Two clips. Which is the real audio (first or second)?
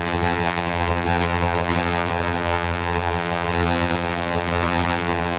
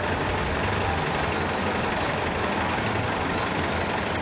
second